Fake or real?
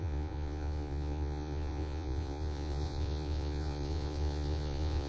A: fake